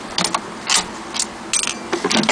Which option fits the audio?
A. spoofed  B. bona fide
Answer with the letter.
B